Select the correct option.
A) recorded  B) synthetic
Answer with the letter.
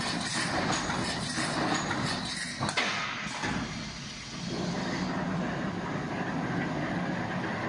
A